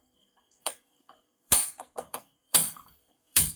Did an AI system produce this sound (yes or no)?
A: yes